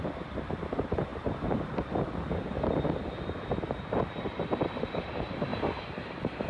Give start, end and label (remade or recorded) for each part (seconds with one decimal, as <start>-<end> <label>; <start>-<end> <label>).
0.0-6.5 recorded